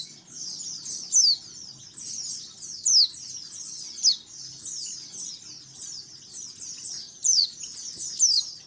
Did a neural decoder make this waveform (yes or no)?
no